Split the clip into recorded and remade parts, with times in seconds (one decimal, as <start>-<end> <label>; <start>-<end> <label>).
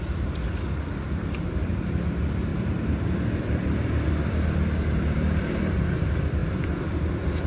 0.0-2.5 recorded; 2.5-5.6 remade; 5.6-6.4 recorded; 6.4-7.0 remade; 7.0-7.5 recorded